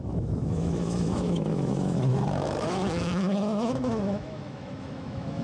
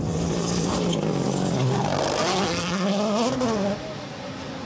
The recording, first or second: second